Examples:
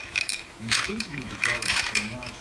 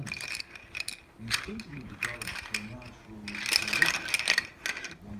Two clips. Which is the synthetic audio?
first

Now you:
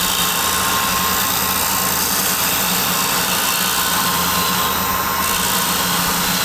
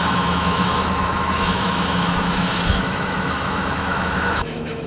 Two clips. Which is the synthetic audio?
second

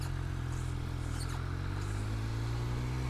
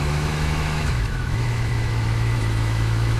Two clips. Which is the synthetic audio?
second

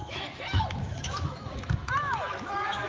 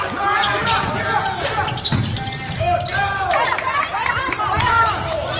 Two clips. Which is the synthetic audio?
first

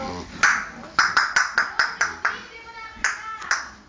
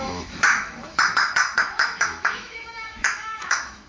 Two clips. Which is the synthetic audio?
second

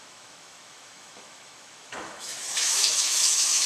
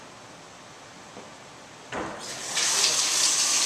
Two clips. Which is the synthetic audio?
first